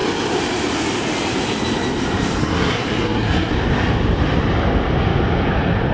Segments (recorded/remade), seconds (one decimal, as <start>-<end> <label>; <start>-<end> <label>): 0.0-2.4 recorded; 2.4-3.5 remade; 3.5-5.9 recorded